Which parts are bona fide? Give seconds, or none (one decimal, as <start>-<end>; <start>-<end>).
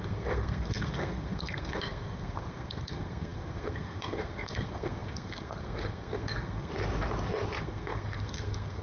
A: 6.7-7.6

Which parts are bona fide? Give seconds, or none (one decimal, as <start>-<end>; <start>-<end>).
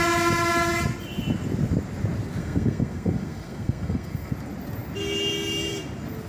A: 0.0-2.4; 4.3-6.3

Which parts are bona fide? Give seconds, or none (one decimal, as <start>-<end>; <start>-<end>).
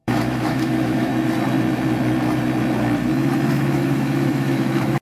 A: 1.1-3.5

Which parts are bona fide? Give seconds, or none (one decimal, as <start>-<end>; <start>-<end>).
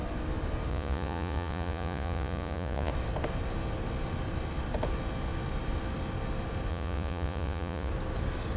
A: 0.0-0.7; 2.9-6.7; 7.9-8.6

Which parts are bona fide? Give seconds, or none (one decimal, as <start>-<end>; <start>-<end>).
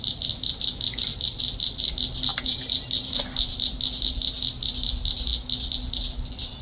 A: 0.0-2.3; 3.2-6.6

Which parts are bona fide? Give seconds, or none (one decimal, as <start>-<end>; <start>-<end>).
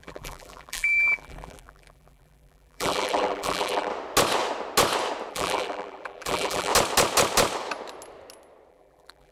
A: 3.9-5.3; 6.7-8.7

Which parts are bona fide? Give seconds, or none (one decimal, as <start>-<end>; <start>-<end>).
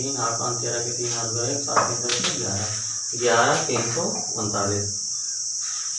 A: 0.0-6.0